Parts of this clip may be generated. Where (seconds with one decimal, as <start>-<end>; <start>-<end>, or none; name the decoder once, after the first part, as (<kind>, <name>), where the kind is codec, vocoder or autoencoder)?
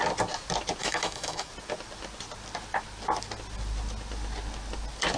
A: 0.8-1.5 (autoencoder, DAC-VAE)